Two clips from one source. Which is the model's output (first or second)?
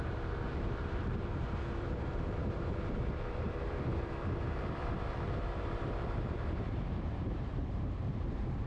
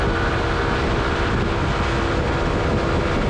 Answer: first